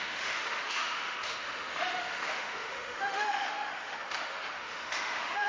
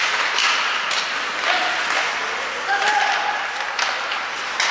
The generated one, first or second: first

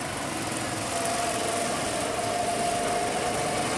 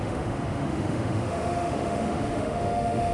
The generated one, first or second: second